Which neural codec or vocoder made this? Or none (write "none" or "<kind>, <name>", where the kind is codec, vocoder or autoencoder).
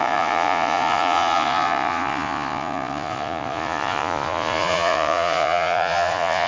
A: vocoder, Vocos